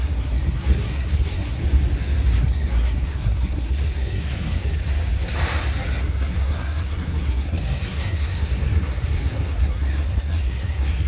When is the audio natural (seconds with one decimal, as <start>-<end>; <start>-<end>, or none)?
1.6-2.4; 4.8-6.0